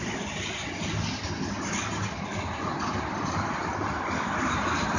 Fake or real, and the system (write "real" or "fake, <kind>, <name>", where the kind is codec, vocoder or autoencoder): real